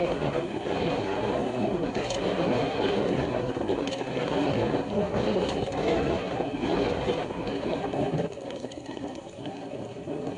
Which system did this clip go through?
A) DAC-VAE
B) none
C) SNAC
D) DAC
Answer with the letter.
C